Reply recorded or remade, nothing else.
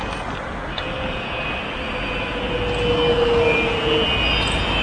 recorded